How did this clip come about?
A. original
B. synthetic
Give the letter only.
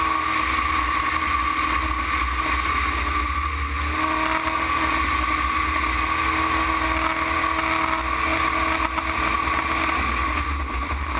A